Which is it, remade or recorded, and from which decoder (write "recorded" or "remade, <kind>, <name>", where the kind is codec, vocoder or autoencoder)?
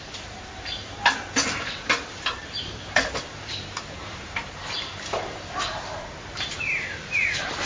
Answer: remade, vocoder, BigVGAN v2